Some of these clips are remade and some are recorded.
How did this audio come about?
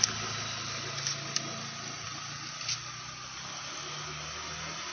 recorded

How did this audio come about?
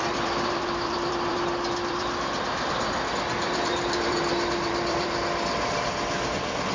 remade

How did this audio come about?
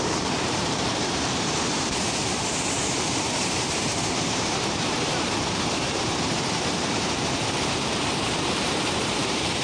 remade